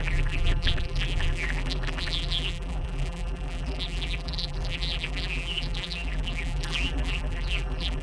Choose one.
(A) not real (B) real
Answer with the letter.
A